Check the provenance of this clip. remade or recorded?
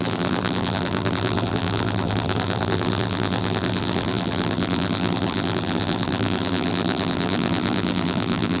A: remade